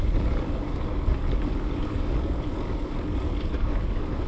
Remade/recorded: remade